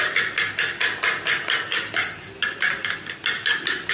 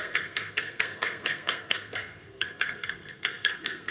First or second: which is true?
first